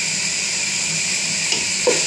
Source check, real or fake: real